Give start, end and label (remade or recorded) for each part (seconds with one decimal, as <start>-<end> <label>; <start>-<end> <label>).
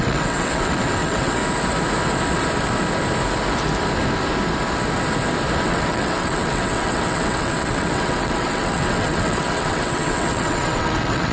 0.0-1.4 remade; 1.4-5.6 recorded; 5.6-11.3 remade